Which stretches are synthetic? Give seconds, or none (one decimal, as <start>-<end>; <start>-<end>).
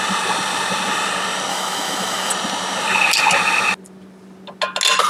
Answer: 1.5-2.3